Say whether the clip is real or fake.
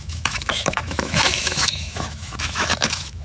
fake